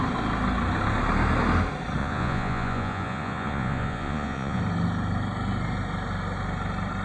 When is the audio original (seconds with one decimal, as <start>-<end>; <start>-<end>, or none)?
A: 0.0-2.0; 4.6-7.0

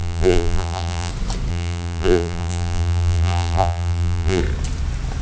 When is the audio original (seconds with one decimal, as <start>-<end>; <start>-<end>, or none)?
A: 1.1-1.5; 4.4-5.2

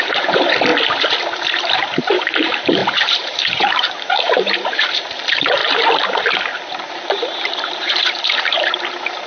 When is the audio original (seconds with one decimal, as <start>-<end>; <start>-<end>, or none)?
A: 0.7-1.5; 5.6-7.6